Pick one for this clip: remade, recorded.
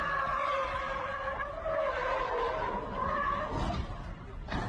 recorded